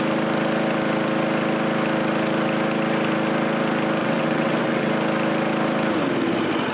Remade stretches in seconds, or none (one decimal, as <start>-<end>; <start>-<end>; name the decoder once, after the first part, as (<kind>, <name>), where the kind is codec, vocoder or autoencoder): 4.0-4.9 (vocoder, WaveNeXt)